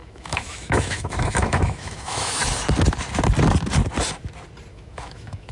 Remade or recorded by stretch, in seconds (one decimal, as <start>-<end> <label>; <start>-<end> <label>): 0.0-2.4 remade; 2.4-4.7 recorded; 4.7-5.5 remade